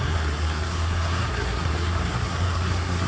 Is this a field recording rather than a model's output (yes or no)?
no